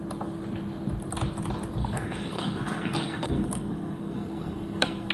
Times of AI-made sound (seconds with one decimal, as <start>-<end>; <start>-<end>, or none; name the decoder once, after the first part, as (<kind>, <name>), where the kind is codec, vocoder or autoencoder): 1.8-5.1 (codec, SNAC)